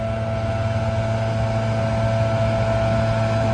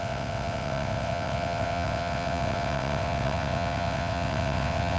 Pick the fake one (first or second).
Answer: second